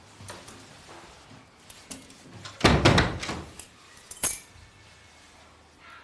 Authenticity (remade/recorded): recorded